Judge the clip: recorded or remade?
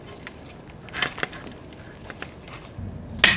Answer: recorded